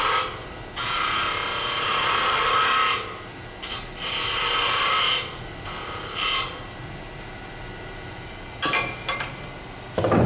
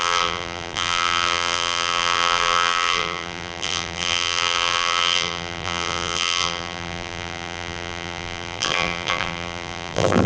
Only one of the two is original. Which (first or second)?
first